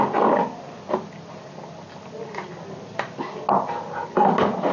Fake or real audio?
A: real